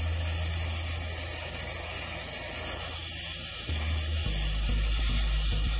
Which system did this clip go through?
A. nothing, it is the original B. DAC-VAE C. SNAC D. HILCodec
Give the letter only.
A